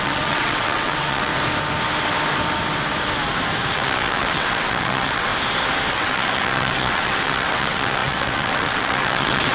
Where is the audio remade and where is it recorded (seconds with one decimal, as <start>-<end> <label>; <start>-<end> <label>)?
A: 0.0-1.3 remade; 1.3-3.7 recorded; 3.7-5.3 remade; 5.3-5.9 recorded; 5.9-9.5 remade

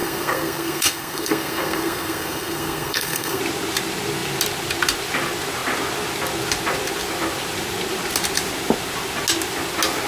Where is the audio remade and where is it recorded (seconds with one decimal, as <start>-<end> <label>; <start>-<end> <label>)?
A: 0.0-3.4 remade; 3.4-10.1 recorded

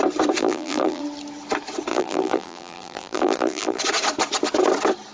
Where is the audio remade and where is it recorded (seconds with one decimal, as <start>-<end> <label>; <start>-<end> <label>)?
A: 0.0-0.4 recorded; 0.4-1.0 remade; 1.0-1.9 recorded; 1.9-3.8 remade; 3.8-5.1 recorded